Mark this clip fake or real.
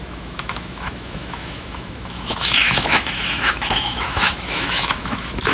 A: fake